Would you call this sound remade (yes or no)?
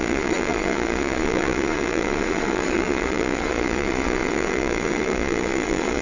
yes